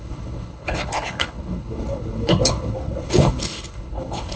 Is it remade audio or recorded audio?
remade